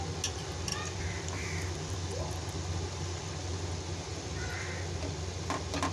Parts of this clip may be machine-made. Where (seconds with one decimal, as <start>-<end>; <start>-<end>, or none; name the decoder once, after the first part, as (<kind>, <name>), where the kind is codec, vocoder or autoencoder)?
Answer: 0.7-3.2 (vocoder, BigVGAN v2)